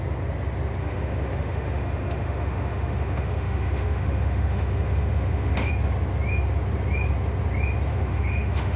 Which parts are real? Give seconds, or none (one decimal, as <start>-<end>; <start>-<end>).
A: 0.0-0.8; 5.7-7.9